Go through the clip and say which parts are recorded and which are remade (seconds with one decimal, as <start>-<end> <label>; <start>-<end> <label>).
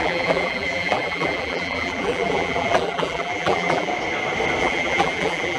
0.0-3.9 remade; 3.9-4.6 recorded; 4.6-5.6 remade